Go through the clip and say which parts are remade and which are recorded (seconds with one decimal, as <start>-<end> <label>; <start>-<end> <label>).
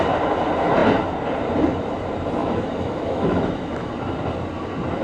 0.0-2.4 recorded; 2.4-3.9 remade; 3.9-5.0 recorded